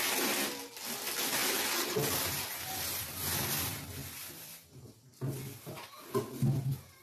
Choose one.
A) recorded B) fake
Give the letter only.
A